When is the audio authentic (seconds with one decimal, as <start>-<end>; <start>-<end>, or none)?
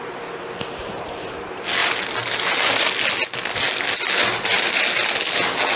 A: 0.0-5.8